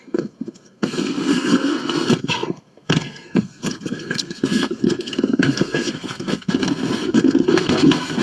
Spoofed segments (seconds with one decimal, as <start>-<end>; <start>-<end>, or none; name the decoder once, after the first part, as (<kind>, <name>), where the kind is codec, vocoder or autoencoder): 0.0-8.2 (codec, SNAC)